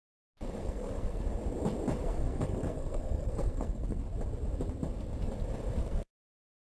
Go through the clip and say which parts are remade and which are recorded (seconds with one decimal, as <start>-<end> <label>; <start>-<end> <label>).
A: 0.0-0.6 recorded; 0.6-1.2 remade; 1.2-2.0 recorded; 2.0-4.0 remade; 4.0-5.8 recorded; 5.8-6.7 remade